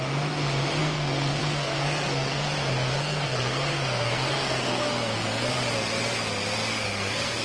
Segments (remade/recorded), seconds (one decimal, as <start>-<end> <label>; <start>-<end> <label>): 0.0-0.8 recorded; 0.8-2.5 remade; 2.5-2.9 recorded; 2.9-5.5 remade; 5.5-6.7 recorded; 6.7-7.4 remade